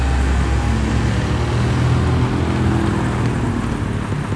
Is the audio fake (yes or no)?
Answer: no